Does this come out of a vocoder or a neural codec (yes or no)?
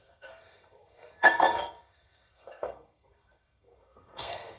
yes